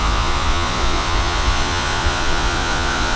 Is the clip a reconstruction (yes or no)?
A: yes